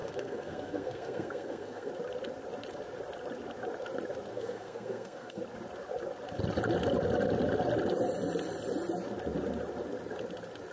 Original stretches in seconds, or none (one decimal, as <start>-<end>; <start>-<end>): 1.9-4.3; 5.4-10.7